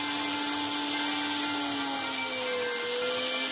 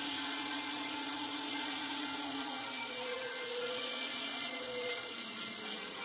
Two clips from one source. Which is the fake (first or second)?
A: second